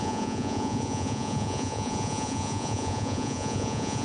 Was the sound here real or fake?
fake